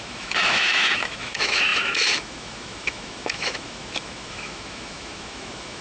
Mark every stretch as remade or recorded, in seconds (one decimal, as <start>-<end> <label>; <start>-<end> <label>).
0.0-5.8 remade